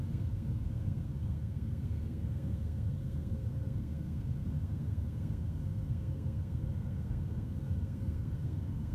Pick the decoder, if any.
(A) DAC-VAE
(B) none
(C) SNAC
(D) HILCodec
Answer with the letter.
C